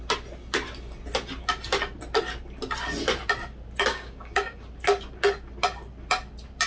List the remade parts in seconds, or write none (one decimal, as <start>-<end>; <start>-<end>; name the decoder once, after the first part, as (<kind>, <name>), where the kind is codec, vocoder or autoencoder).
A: 3.9-4.6 (codec, DAC)